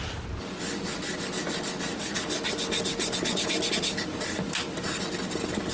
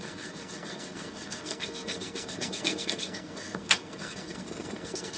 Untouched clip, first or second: first